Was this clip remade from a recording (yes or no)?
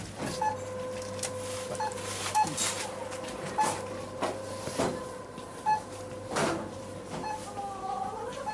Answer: no